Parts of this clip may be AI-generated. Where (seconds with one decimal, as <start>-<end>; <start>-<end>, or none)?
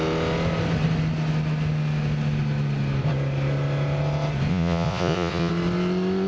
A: 4.5-5.5